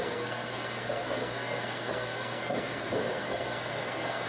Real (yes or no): no